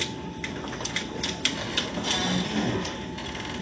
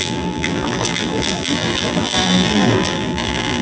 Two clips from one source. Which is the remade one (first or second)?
second